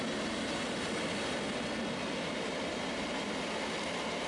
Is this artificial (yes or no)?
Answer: no